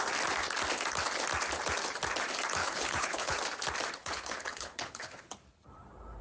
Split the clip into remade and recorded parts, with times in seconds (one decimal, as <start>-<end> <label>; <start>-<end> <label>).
0.0-2.6 recorded; 2.6-3.4 remade; 3.4-4.0 recorded; 4.0-5.3 remade; 5.3-6.2 recorded